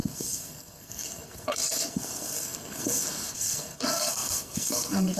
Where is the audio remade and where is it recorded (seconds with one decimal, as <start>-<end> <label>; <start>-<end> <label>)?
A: 0.0-5.2 remade